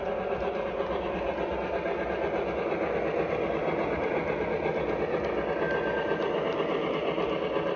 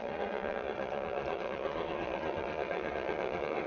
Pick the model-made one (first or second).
second